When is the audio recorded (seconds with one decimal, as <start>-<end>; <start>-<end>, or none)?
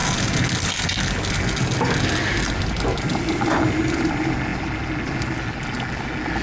0.0-6.4